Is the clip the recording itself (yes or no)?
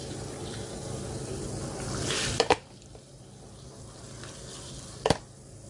yes